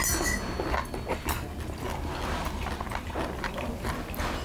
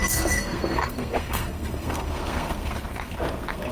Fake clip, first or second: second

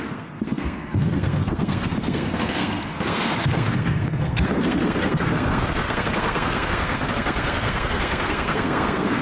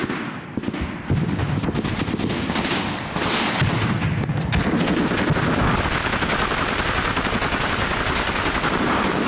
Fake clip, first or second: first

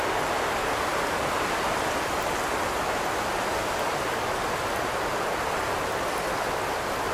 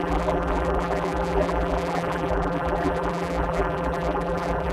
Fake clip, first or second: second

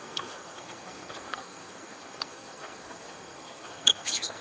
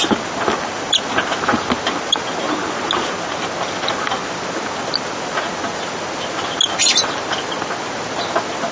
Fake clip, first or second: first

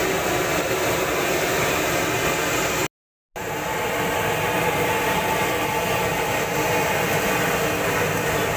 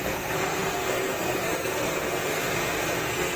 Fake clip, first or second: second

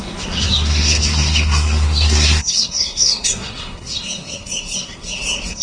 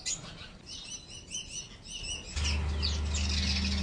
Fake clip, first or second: first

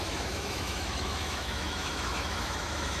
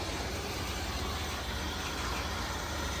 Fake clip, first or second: first